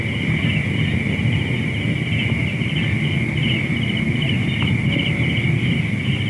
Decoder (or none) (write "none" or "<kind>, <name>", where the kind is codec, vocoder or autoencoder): none